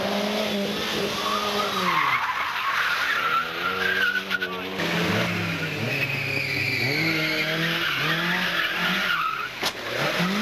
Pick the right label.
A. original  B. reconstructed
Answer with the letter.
A